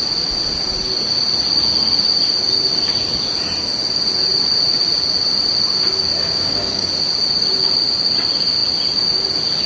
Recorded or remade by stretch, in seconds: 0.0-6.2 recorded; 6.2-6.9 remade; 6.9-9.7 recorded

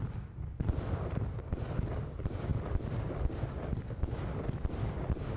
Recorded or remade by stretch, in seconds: 0.0-5.4 recorded

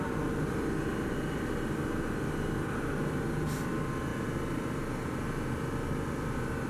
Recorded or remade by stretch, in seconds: 0.0-6.7 recorded

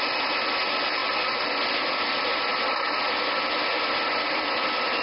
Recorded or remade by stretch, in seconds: 0.0-5.0 recorded

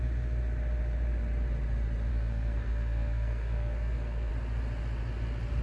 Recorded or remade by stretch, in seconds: 0.0-2.1 recorded; 2.1-4.3 remade; 4.3-5.6 recorded

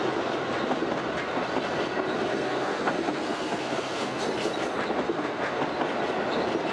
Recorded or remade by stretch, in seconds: 0.0-2.3 recorded; 2.3-4.2 remade; 4.2-5.0 recorded; 5.0-5.6 remade; 5.6-6.7 recorded